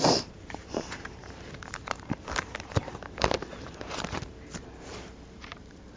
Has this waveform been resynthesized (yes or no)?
yes